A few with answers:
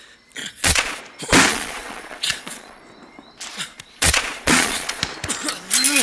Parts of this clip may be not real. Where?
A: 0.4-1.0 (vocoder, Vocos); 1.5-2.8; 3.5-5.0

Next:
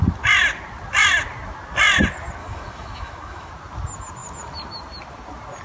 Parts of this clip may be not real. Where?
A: 2.4-3.5 (autoencoder, DAC-VAE)

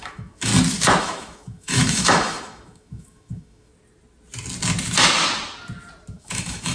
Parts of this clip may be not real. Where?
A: 0.0-0.5 (autoencoder, DAC-VAE); 1.0-3.7; 6.1-6.7

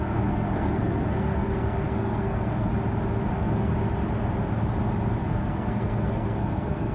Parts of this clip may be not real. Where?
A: 0.0-2.7 (codec, SNAC); 3.3-3.7; 5.2-6.9

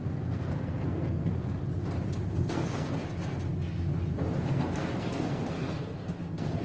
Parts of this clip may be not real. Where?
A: 0.0-1.6 (codec, SNAC); 2.3-3.0; 4.4-6.6

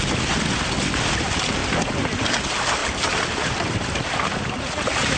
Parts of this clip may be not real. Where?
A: none